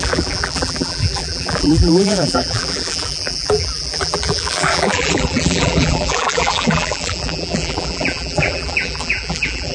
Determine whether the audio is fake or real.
fake